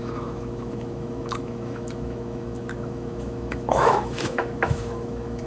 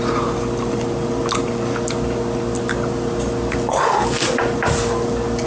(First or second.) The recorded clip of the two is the second